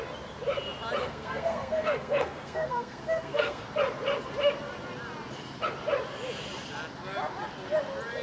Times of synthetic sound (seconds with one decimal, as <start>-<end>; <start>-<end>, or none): 1.0-3.6